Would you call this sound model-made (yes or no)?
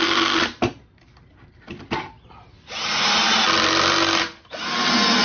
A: no